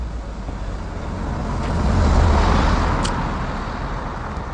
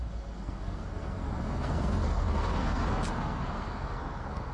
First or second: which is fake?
second